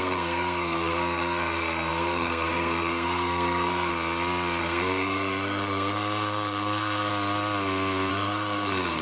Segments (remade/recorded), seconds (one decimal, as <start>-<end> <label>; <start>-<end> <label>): 0.0-3.9 remade; 3.9-4.6 recorded; 4.6-7.1 remade; 7.1-8.1 recorded; 8.1-9.0 remade